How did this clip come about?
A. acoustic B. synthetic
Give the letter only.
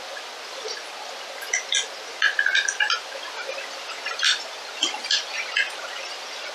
A